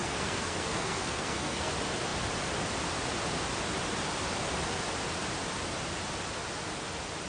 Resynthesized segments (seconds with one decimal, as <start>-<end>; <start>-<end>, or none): 0.0-1.7